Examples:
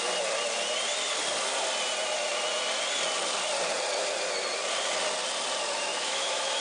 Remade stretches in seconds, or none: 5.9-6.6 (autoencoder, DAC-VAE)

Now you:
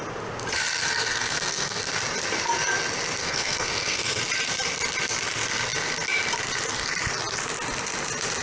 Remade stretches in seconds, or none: 0.8-1.9 (codec, SNAC); 3.2-4.2

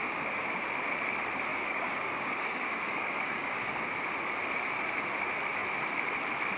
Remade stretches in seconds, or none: 0.0-0.7 (codec, DAC); 1.5-3.9